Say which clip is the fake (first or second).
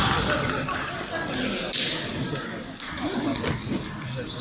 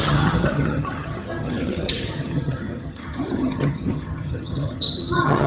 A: second